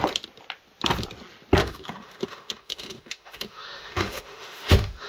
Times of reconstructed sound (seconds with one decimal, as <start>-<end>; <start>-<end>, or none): 1.6-5.1